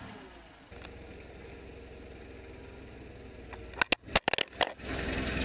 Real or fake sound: real